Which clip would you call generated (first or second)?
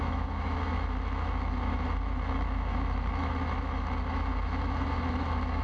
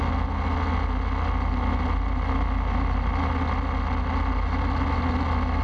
first